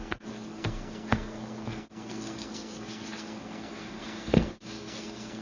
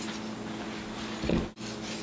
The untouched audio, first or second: second